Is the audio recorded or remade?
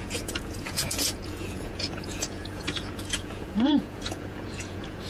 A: remade